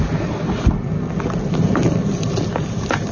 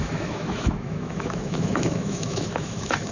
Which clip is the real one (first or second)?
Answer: first